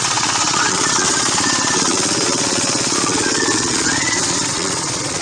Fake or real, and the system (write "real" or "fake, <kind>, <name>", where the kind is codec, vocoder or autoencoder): fake, vocoder, Vocos